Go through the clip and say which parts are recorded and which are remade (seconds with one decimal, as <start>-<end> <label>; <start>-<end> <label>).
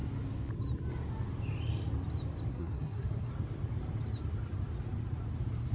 0.0-2.5 recorded; 2.5-3.3 remade; 3.3-5.7 recorded